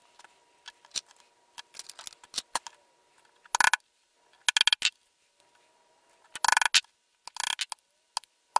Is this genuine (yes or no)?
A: yes